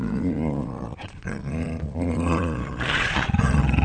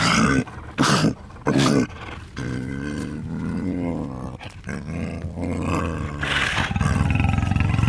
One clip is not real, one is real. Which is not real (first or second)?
first